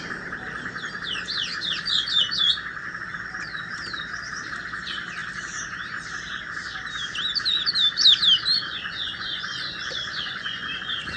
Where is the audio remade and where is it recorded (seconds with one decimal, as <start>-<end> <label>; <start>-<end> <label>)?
0.0-8.7 recorded; 8.7-11.2 remade